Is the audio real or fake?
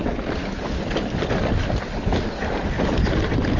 real